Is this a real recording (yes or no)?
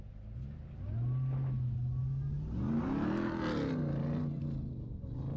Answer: yes